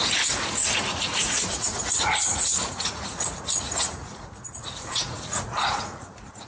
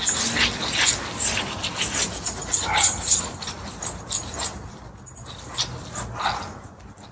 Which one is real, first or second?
second